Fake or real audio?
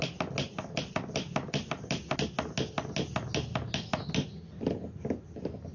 real